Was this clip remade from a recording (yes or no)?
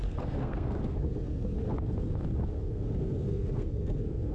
yes